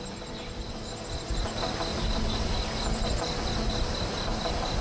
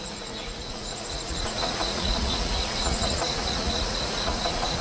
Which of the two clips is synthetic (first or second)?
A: second